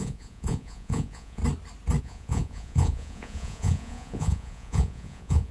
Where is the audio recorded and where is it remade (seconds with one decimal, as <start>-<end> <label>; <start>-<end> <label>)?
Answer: 0.0-1.4 remade; 1.4-2.0 recorded; 2.0-5.5 remade